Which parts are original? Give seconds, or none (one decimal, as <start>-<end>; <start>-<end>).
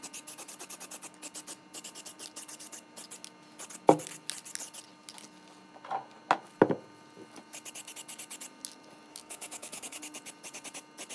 0.0-9.1; 10.0-11.1